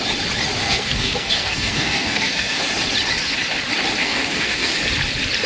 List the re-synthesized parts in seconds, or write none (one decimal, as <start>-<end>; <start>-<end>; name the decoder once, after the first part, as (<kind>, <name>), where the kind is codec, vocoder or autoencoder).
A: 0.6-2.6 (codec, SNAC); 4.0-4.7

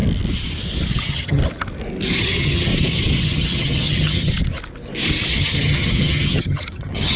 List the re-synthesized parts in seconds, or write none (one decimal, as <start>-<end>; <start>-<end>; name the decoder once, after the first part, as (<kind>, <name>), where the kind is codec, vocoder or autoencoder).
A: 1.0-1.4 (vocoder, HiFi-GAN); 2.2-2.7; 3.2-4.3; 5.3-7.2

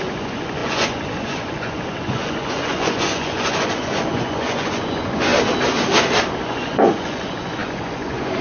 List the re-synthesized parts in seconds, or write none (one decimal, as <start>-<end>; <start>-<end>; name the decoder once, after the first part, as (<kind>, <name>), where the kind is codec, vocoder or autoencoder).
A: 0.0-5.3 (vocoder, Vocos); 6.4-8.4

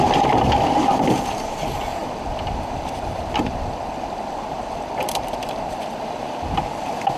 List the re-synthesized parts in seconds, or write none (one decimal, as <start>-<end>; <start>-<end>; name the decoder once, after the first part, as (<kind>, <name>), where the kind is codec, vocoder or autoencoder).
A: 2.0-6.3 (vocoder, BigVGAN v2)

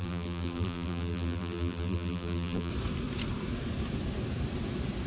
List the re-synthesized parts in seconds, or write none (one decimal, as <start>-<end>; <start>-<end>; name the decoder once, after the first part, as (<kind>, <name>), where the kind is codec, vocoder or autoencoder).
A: 0.0-2.7 (vocoder, BigVGAN v2)

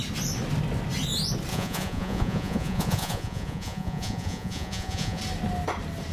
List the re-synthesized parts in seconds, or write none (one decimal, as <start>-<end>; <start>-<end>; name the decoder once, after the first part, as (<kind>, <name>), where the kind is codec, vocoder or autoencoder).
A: 1.5-5.2 (vocoder, Vocos)

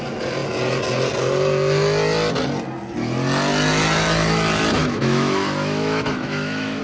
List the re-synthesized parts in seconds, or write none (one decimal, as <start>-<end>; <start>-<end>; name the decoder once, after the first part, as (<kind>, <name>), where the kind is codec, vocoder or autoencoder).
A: 4.8-6.8 (autoencoder, DAC-VAE)

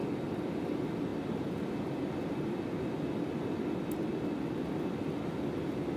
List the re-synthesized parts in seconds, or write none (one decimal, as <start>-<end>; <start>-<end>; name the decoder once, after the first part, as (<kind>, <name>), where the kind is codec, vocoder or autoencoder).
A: none